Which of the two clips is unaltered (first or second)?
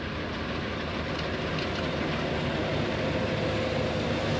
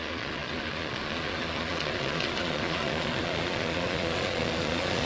first